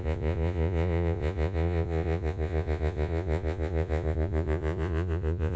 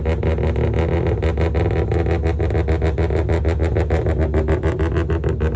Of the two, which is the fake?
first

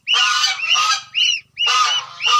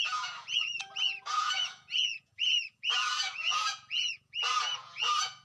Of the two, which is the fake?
second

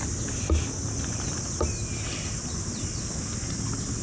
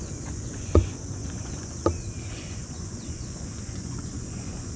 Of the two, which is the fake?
second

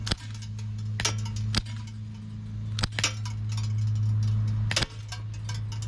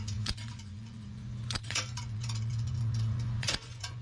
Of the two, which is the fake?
second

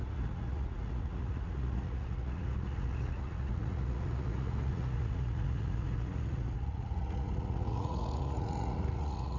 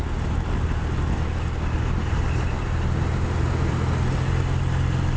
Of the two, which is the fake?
first